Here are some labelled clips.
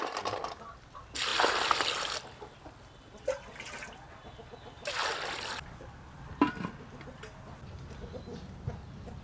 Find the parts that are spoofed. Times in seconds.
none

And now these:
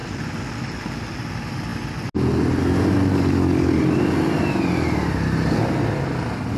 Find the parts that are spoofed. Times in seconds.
3.1-3.7 (codec, DAC)

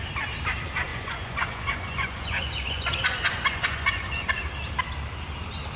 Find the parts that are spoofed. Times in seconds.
0.9-4.4 (vocoder, Vocos)

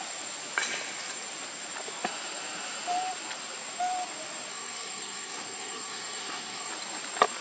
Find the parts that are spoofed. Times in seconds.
4.5-6.7 (codec, SNAC)

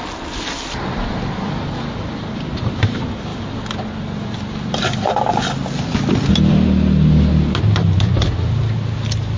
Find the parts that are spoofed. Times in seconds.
none

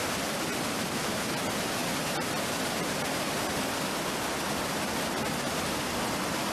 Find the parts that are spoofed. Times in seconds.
none